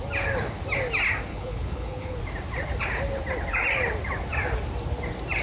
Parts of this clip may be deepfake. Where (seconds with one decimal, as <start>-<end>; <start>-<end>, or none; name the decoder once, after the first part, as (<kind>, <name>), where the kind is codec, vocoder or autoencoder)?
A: 1.3-2.2 (codec, HILCodec)